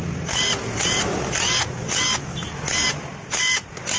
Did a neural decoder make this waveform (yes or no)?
no